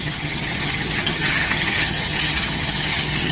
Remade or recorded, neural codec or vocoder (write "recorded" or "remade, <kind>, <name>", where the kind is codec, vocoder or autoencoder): remade, vocoder, HiFi-GAN